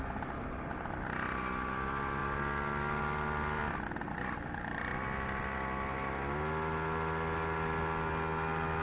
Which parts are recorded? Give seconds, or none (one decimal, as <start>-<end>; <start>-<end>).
0.0-8.8